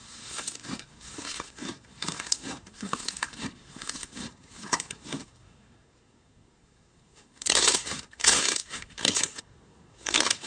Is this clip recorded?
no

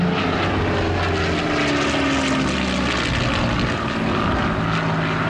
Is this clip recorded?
yes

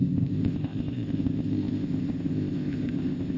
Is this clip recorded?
no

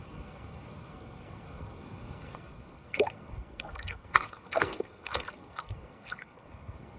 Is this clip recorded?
no